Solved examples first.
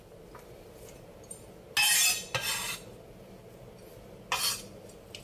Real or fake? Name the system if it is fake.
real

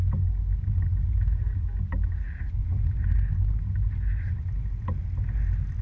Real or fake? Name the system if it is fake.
real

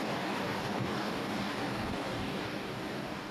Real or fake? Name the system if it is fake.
fake, codec, DAC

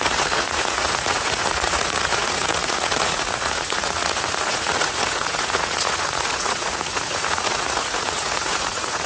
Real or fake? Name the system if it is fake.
fake, vocoder, Vocos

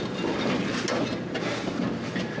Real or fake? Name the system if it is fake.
real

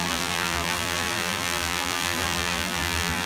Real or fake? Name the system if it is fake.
fake, vocoder, BigVGAN v2